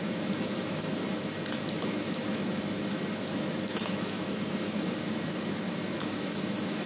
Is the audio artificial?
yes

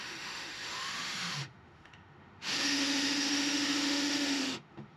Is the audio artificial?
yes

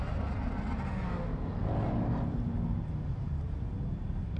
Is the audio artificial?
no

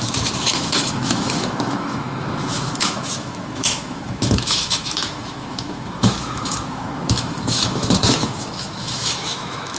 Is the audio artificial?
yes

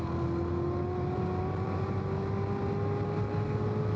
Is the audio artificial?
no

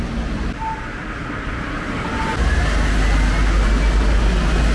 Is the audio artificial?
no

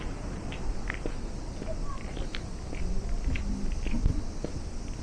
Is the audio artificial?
no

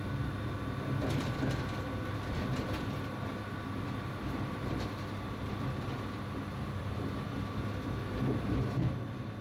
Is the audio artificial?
no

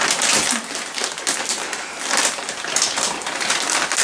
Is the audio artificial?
no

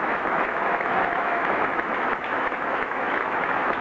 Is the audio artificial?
yes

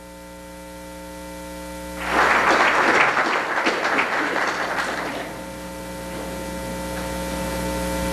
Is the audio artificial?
no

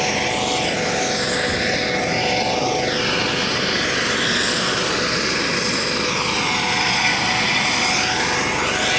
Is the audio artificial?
no